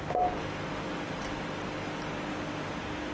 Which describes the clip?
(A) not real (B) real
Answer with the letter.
B